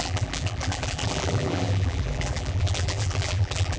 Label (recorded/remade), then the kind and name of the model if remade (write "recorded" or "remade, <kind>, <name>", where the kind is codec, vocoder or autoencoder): remade, vocoder, BigVGAN v2